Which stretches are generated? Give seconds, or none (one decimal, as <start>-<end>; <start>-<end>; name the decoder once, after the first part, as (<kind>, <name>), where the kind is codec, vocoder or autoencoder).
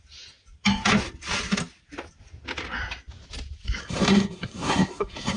3.8-5.4 (codec, SNAC)